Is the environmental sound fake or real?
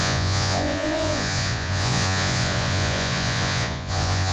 fake